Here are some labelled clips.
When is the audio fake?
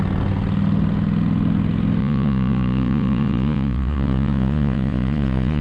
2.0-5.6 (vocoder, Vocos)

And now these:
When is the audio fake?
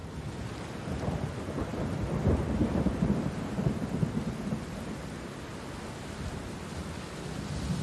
none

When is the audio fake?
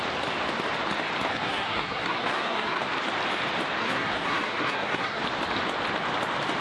1.3-2.8 (codec, SNAC); 3.8-5.2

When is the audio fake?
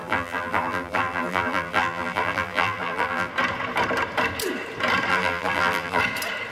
0.0-3.3 (vocoder, BigVGAN v2); 5.1-6.0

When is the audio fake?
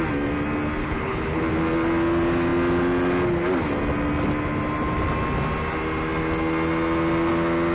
0.8-1.4 (codec, HILCodec)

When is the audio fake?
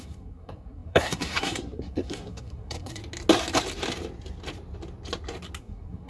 0.0-3.0 (codec, SNAC); 5.6-6.1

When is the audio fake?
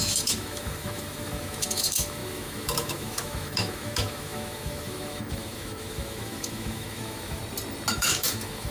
0.0-7.4 (autoencoder, DAC-VAE); 7.9-8.7